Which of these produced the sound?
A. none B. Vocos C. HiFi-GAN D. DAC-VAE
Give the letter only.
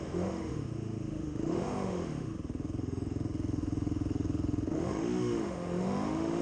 D